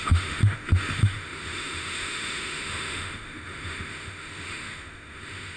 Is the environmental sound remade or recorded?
remade